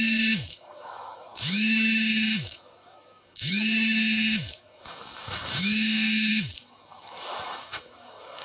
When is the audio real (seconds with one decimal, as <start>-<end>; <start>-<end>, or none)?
none